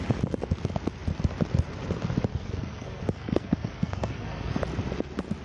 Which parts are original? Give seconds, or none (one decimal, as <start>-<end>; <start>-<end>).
0.0-2.3; 4.6-5.4